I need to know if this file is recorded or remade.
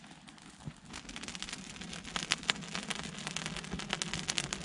recorded